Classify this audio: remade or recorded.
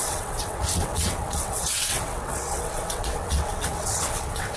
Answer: remade